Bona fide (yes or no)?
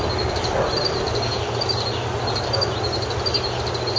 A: yes